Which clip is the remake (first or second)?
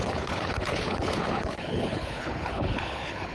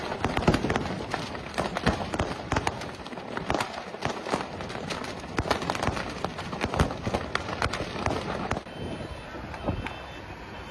first